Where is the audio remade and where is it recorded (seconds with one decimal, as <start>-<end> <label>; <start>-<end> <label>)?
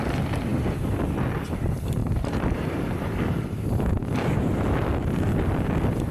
0.0-6.1 recorded